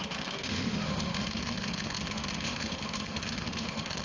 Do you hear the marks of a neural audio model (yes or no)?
yes